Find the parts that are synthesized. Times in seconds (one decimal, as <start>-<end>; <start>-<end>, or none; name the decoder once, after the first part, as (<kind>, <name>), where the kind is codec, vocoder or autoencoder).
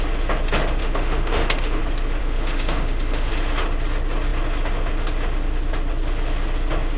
0.8-1.8 (autoencoder, DAC-VAE); 2.2-3.3